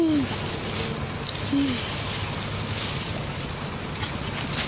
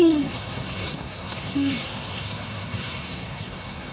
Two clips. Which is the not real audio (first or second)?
second